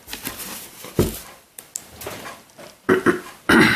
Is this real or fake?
fake